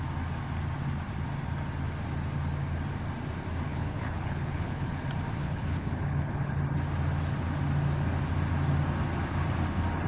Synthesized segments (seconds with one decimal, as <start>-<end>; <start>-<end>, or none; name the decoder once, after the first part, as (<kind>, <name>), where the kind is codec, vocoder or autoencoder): 3.7-5.0 (codec, HILCodec); 5.4-6.6